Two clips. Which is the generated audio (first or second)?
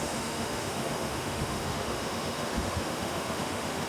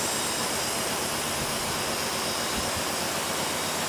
first